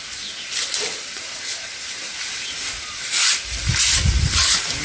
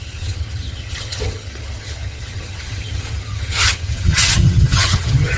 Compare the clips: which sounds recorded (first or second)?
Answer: first